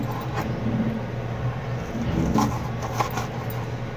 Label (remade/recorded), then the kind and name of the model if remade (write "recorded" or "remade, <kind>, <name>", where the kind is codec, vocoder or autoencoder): recorded